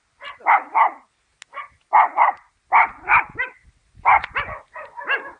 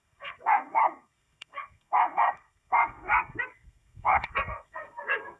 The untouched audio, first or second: first